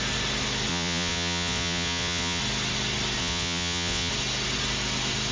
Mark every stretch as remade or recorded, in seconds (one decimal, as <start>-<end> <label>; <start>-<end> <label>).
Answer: 0.0-0.7 recorded; 0.7-2.4 remade; 2.4-3.2 recorded; 3.2-4.1 remade; 4.1-5.3 recorded